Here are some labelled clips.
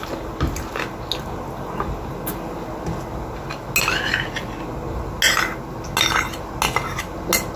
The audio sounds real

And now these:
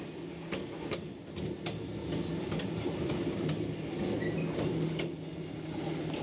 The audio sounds real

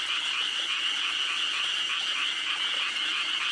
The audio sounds real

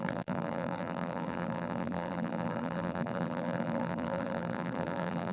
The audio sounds fake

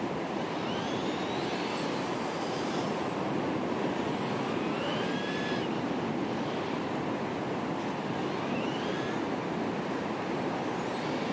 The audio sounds real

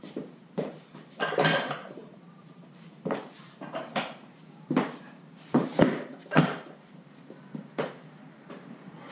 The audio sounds fake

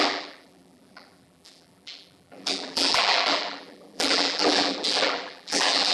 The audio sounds fake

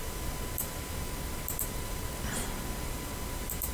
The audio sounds fake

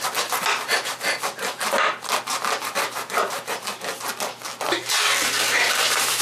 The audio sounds real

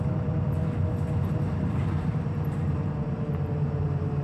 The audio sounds fake